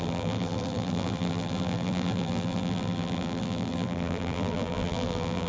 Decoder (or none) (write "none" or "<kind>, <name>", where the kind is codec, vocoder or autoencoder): vocoder, BigVGAN v2